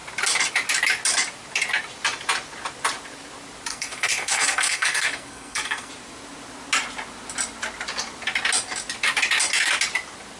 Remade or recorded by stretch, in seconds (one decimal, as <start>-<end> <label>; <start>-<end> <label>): 0.0-3.7 recorded; 3.7-5.9 remade; 5.9-10.4 recorded